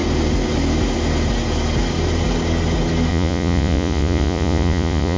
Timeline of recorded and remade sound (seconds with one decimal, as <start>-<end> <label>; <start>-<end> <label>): 0.0-3.1 recorded; 3.1-5.2 remade